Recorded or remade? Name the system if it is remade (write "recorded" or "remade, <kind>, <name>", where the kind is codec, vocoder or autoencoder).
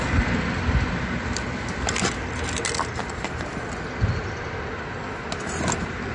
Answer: recorded